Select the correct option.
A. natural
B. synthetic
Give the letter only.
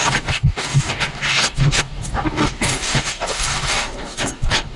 B